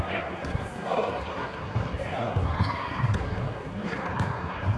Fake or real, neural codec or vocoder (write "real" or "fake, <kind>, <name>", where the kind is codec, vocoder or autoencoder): fake, codec, SNAC